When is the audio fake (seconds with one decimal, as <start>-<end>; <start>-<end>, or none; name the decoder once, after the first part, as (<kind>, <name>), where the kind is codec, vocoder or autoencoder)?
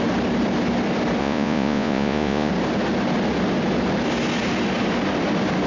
1.2-2.5 (vocoder, Vocos)